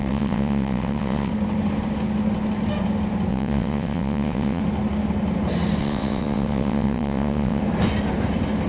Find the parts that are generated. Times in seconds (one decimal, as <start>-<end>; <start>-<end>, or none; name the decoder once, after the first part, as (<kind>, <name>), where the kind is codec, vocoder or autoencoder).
0.0-1.3 (vocoder, WaveNeXt); 3.3-4.6; 5.8-7.6